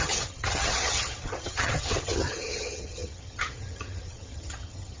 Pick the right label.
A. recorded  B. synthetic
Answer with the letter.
B